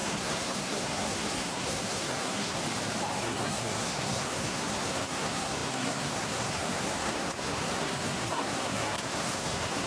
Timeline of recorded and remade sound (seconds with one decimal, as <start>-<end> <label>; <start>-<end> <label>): 0.0-2.6 remade; 2.6-3.2 recorded; 3.2-9.9 remade